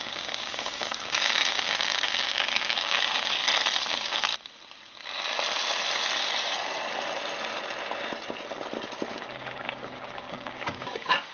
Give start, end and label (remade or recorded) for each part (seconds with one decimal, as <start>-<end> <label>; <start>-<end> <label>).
0.0-3.4 remade; 3.4-3.9 recorded; 3.9-4.3 remade; 4.3-9.1 recorded; 9.1-11.3 remade